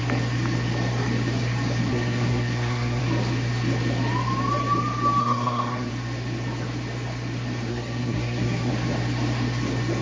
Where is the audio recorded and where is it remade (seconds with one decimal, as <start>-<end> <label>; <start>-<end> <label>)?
0.0-1.9 recorded; 1.9-3.0 remade; 3.0-5.2 recorded; 5.2-5.9 remade; 5.9-7.7 recorded; 7.7-8.7 remade; 8.7-10.0 recorded